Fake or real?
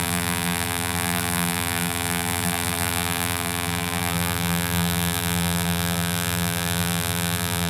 fake